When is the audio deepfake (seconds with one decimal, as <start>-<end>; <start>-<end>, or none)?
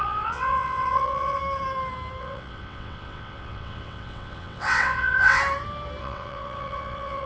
0.0-1.4; 2.2-5.4; 6.0-7.3